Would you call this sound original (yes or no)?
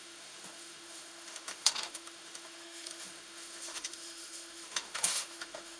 no